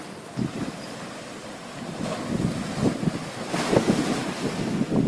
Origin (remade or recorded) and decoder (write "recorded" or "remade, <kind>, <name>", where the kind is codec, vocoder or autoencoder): recorded